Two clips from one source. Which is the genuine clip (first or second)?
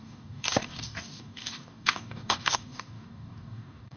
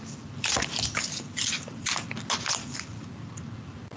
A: second